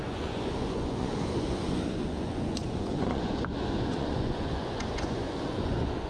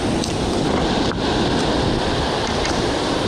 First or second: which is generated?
first